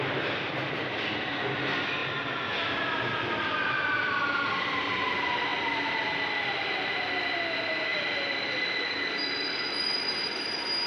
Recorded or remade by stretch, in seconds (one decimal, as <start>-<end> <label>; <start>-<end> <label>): 0.0-7.9 recorded; 7.9-9.6 remade; 9.6-10.9 recorded